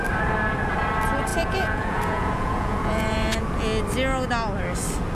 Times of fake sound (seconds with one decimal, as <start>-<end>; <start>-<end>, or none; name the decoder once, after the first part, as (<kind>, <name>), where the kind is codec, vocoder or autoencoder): 1.3-3.4 (vocoder, Vocos)